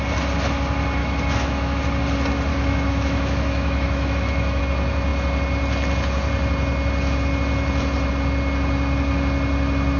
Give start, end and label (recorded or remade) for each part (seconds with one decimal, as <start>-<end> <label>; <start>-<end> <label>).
0.0-1.0 recorded; 1.0-1.8 remade; 1.8-2.5 recorded; 2.5-4.6 remade; 4.6-10.0 recorded